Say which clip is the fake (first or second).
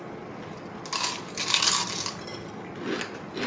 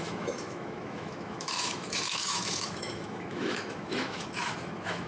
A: second